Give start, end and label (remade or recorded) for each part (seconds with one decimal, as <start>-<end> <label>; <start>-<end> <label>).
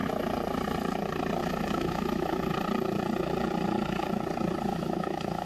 0.0-1.4 recorded; 1.4-2.5 remade; 2.5-4.7 recorded; 4.7-5.5 remade